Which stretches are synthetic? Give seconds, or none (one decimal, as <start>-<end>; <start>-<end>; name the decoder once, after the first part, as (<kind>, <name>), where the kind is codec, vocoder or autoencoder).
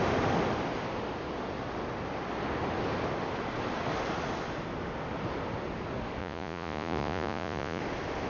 6.2-7.8 (vocoder, Vocos)